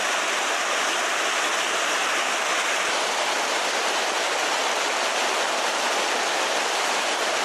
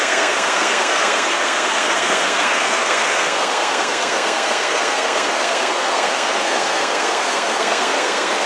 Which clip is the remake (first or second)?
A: second